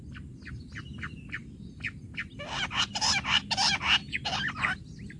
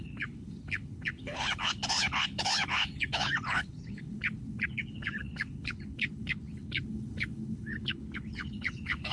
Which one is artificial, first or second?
second